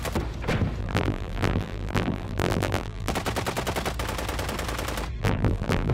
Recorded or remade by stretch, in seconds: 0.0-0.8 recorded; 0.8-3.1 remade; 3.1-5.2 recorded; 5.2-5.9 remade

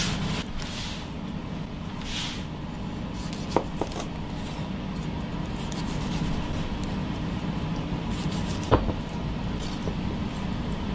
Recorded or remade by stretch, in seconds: 0.0-5.3 recorded; 5.3-6.3 remade; 6.3-7.0 recorded; 7.0-9.4 remade; 9.4-10.9 recorded

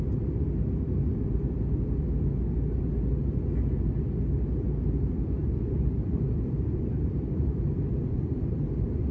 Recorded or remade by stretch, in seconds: 0.0-5.4 recorded; 5.4-9.1 remade

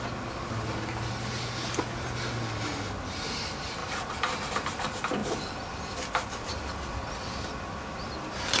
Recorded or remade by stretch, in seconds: 0.0-3.8 remade; 3.8-4.5 recorded; 4.5-6.9 remade; 6.9-7.9 recorded; 7.9-8.6 remade

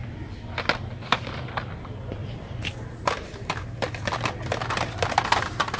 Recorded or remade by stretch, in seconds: 0.0-2.2 recorded; 2.2-5.8 remade